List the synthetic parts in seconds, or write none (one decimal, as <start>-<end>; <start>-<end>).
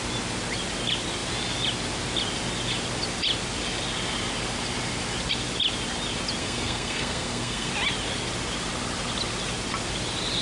6.4-7.7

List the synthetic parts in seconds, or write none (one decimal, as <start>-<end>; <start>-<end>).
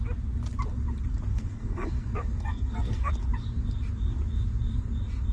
1.3-3.1